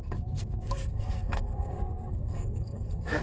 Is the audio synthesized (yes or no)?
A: yes